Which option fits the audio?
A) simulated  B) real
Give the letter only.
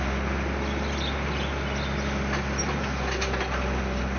B